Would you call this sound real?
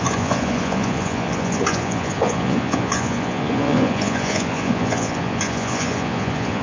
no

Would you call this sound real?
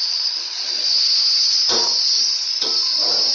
yes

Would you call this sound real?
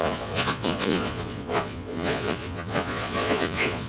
no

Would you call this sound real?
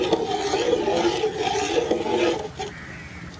yes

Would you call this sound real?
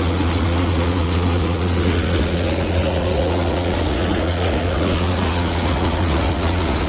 no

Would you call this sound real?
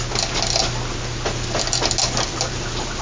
yes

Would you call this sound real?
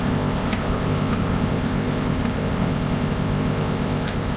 no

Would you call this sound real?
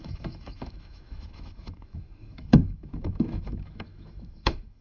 no